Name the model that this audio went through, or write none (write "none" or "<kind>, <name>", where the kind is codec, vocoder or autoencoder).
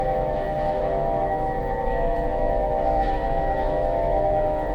autoencoder, DAC-VAE